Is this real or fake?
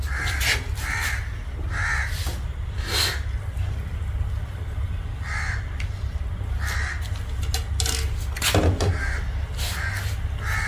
real